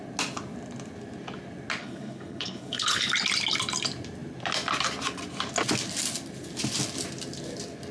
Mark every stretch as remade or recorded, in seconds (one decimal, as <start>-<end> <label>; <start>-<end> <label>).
0.0-1.8 recorded; 1.8-3.1 remade; 3.1-7.9 recorded